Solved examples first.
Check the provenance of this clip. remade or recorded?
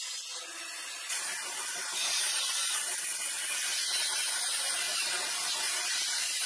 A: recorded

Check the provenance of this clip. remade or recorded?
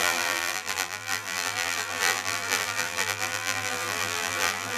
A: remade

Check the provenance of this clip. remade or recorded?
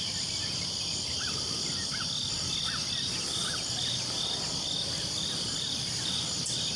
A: recorded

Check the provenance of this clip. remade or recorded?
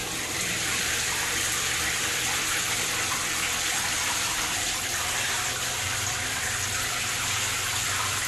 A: remade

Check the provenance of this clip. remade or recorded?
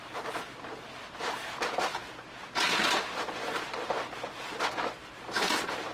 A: recorded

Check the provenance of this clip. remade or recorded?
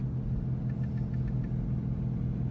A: recorded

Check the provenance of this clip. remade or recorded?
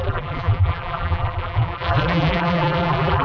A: remade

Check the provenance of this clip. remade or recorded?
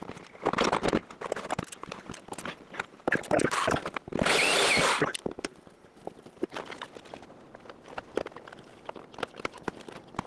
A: recorded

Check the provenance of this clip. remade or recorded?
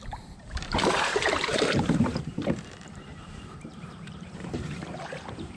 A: remade